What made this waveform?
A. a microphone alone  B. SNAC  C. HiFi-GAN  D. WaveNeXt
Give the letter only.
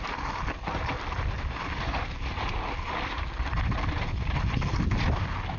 A